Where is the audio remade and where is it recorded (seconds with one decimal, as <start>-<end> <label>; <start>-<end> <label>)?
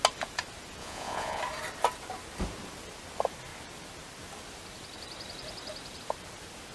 0.0-0.8 recorded; 0.8-1.4 remade; 1.4-6.7 recorded